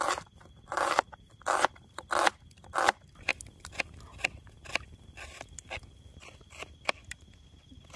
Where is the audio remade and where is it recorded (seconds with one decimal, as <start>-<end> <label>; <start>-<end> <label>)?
0.0-8.0 recorded